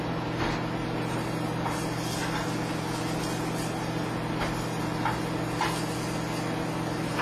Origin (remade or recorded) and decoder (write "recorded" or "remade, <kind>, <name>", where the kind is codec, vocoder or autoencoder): recorded